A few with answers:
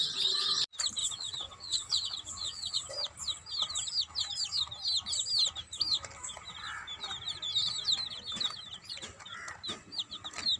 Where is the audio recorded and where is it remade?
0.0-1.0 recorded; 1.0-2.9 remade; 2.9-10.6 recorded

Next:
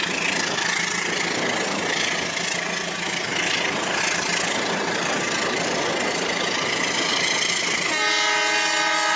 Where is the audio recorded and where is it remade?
0.0-9.2 recorded